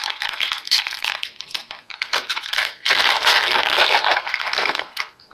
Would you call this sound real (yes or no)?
no